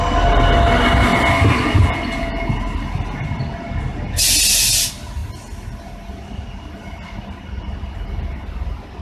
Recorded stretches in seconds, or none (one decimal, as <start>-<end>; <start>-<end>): 0.0-9.0